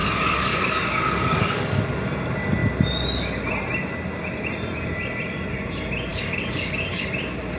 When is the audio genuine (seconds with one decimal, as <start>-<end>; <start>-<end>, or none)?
1.8-6.1; 7.1-7.6